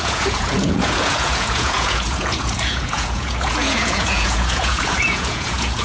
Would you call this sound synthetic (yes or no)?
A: yes